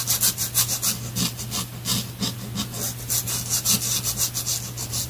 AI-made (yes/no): no